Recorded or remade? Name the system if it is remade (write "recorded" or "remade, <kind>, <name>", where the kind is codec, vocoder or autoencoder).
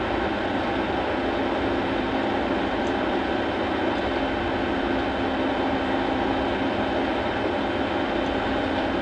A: recorded